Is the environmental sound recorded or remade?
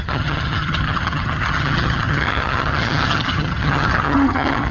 remade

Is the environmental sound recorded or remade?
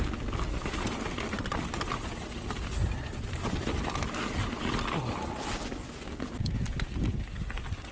recorded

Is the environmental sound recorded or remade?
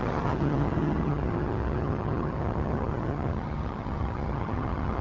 remade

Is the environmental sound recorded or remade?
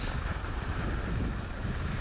recorded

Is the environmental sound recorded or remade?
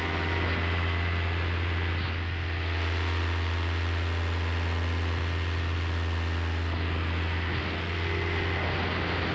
recorded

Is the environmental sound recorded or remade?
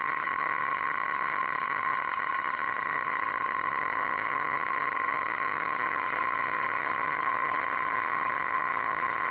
remade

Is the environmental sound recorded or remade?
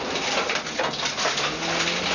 recorded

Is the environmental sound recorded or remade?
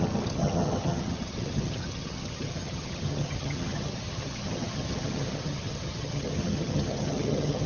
remade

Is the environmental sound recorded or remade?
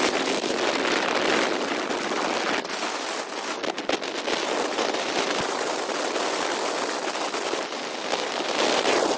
recorded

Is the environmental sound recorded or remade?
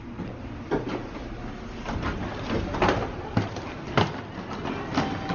recorded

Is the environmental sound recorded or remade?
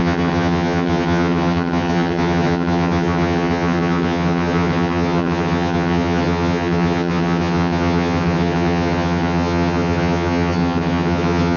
remade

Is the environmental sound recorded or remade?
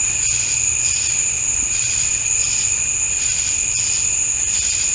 recorded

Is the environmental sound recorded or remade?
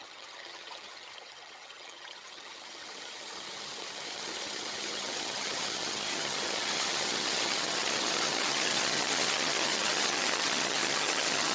remade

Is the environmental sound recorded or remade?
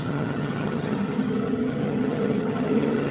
remade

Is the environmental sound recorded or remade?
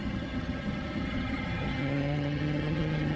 remade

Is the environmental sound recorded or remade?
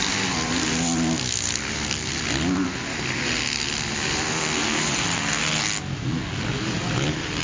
recorded